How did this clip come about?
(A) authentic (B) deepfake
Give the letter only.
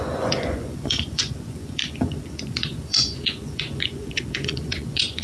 B